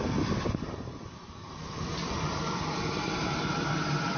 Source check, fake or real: fake